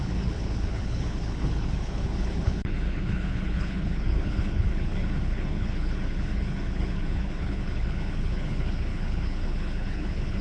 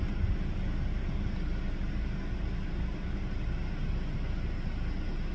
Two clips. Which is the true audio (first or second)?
second